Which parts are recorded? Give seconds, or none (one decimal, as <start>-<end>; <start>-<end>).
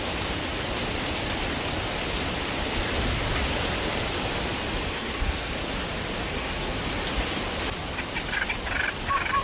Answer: 0.0-4.9; 5.5-6.3; 6.8-9.4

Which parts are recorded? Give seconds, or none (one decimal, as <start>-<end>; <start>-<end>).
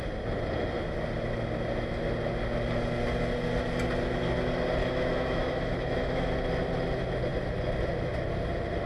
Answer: 0.0-4.8; 6.3-8.9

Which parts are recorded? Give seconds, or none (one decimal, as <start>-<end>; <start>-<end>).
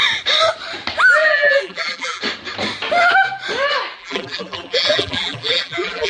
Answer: 0.0-1.2; 2.2-4.0